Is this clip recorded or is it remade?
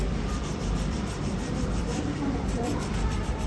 remade